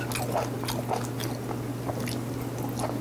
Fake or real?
real